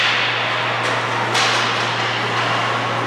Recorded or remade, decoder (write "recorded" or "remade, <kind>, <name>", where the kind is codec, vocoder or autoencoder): recorded